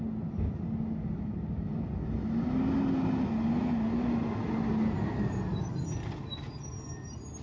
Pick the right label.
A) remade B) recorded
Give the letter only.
B